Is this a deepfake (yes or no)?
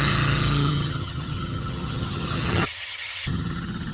yes